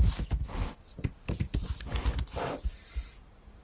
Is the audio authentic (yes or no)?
yes